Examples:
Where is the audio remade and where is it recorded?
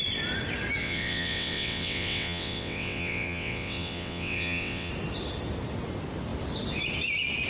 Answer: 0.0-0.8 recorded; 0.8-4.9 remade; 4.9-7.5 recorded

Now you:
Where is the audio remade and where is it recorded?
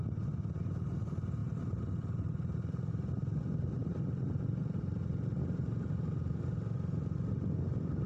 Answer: 0.0-8.1 recorded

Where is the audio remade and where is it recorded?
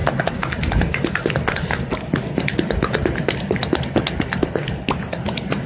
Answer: 0.0-5.7 recorded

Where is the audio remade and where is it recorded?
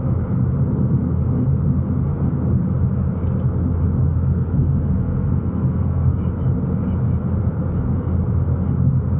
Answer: 0.0-4.1 recorded; 4.1-6.2 remade; 6.2-9.2 recorded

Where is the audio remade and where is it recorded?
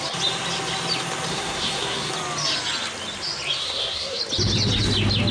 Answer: 0.0-1.3 recorded; 1.3-2.1 remade; 2.1-3.6 recorded; 3.6-4.2 remade; 4.2-5.3 recorded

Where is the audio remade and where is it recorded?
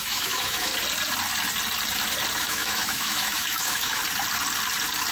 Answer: 0.0-0.7 remade; 0.7-2.4 recorded; 2.4-4.0 remade; 4.0-5.1 recorded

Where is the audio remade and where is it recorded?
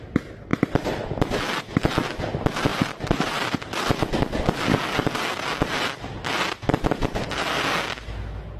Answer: 0.0-0.5 recorded; 0.5-1.6 remade; 1.6-2.7 recorded; 2.7-5.1 remade; 5.1-8.6 recorded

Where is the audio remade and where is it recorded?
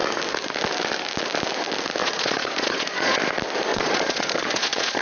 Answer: 0.0-2.0 recorded; 2.0-3.2 remade; 3.2-3.7 recorded; 3.7-5.0 remade